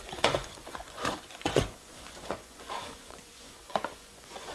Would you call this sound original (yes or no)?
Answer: no